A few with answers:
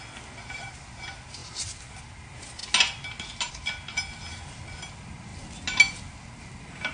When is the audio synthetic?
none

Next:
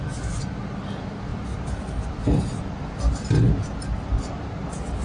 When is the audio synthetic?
none

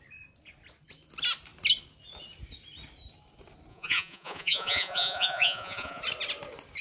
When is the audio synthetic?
3.7-6.0 (vocoder, Vocos)